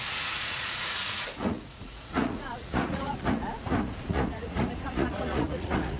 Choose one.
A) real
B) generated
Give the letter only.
B